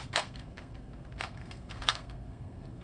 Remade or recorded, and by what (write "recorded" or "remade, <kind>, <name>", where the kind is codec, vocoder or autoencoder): remade, codec, SNAC